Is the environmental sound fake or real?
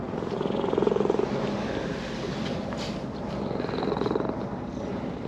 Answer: real